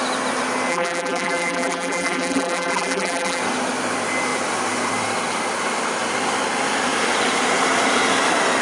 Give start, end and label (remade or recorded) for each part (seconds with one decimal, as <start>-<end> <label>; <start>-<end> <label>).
0.0-0.7 recorded; 0.7-3.4 remade; 3.4-8.6 recorded